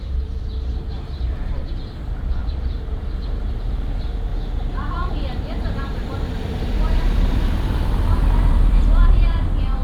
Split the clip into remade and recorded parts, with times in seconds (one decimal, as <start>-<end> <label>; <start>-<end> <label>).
0.0-4.3 remade; 4.3-5.1 recorded; 5.1-9.8 remade